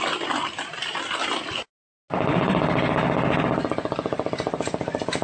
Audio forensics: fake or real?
real